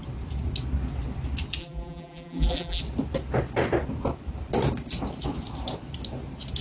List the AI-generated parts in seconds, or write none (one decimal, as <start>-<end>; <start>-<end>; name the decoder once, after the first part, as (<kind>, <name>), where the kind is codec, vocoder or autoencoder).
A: 1.6-2.8 (vocoder, BigVGAN v2)